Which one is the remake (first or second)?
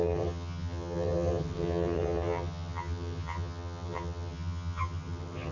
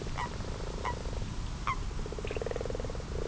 first